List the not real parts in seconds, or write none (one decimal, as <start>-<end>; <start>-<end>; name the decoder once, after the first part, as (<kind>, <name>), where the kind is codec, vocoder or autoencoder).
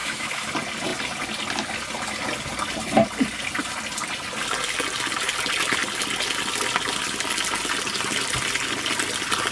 0.0-0.5 (autoencoder, DAC-VAE)